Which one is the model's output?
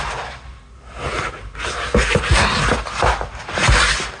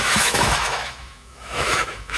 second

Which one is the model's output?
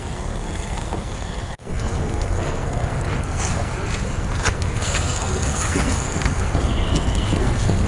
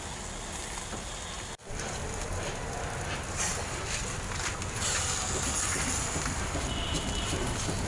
first